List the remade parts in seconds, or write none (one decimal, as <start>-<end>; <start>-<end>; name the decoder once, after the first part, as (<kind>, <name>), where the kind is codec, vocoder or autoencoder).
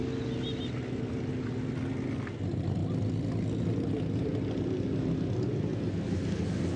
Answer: none